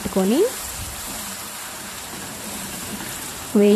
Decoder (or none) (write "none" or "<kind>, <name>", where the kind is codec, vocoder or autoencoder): vocoder, BigVGAN v2